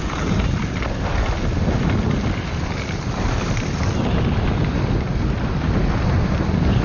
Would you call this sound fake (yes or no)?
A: no